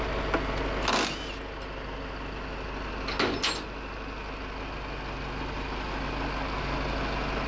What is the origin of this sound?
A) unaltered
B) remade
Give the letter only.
A